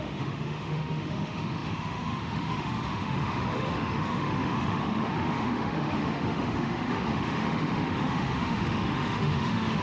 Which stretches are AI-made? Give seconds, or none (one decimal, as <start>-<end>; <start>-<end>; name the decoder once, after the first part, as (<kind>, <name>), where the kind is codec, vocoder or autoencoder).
0.0-9.8 (autoencoder, DAC-VAE)

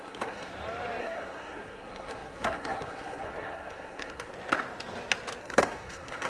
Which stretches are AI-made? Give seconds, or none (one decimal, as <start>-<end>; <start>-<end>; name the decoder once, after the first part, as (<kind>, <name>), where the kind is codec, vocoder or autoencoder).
0.0-0.5 (codec, SNAC); 1.0-4.3; 5.4-6.3

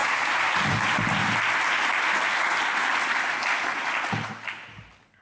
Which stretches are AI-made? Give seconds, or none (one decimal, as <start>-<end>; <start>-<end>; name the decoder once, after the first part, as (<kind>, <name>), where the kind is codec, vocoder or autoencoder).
none

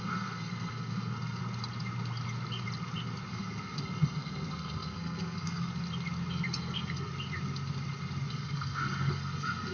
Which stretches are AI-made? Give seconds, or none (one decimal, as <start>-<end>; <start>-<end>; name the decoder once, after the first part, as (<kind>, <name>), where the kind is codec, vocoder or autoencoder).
0.0-1.4 (codec, SNAC); 3.3-5.7; 6.3-7.1; 8.3-9.7

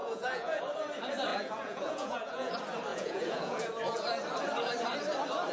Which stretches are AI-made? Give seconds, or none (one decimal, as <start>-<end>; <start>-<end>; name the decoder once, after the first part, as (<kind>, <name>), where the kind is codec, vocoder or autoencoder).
0.0-0.6 (vocoder, Vocos); 1.3-2.5; 2.9-3.7

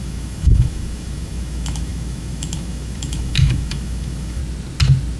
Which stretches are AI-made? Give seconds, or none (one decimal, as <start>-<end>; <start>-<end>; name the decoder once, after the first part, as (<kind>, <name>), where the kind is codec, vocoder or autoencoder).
0.0-4.4 (autoencoder, DAC-VAE)

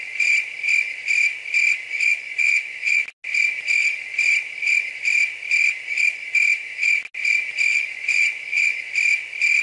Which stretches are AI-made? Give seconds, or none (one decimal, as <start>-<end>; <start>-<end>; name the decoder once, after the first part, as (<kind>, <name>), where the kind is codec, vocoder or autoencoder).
2.1-3.0 (vocoder, Vocos); 7.7-8.9